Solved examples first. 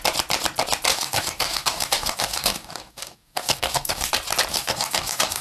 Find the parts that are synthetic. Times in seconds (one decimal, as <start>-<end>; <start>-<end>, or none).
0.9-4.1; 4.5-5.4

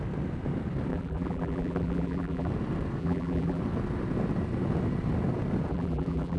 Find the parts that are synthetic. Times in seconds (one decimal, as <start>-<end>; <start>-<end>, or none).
0.9-2.5; 3.0-3.6; 5.7-6.4

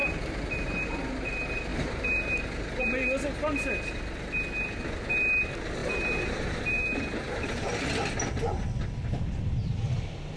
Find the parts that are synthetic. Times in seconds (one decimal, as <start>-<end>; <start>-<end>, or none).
0.0-1.0; 1.7-2.8; 5.8-7.5

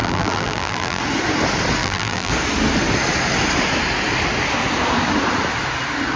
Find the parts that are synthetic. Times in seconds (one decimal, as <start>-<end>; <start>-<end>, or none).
0.0-1.0; 1.8-2.3

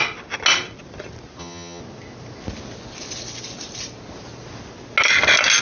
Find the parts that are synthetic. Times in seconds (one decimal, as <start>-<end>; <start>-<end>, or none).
1.4-1.8

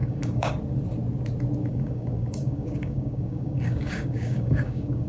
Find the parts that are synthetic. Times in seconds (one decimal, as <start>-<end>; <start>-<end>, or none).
0.0-0.5; 1.6-5.1

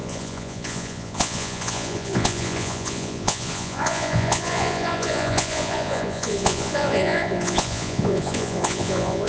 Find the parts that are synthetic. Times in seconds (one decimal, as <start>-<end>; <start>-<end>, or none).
0.0-9.3

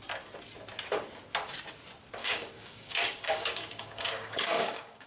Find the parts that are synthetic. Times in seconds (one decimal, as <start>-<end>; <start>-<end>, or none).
2.2-5.1